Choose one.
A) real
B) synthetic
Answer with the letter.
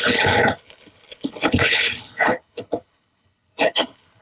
B